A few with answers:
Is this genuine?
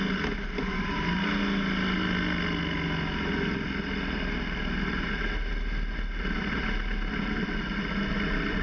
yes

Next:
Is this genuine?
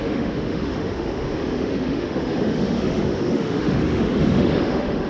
no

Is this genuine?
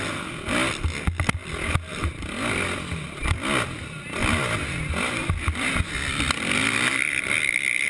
yes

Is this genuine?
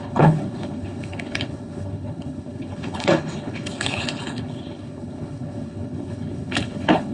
no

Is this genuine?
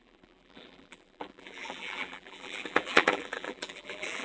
no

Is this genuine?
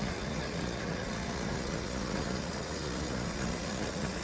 no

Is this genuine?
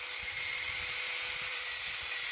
yes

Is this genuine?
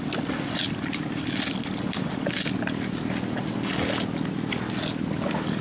yes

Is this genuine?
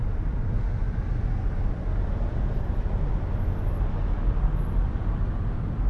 yes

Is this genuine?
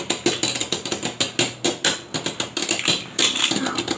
yes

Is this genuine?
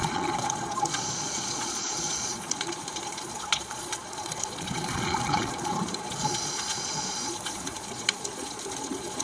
no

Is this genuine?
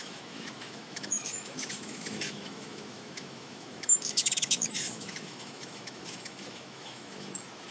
no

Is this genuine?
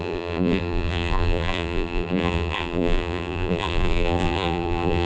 no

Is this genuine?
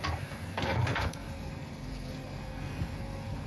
no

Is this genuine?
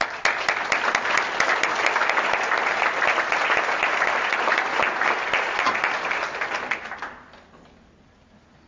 yes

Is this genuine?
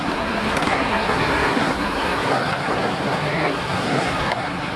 no